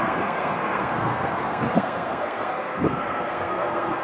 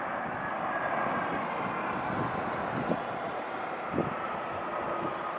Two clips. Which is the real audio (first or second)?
second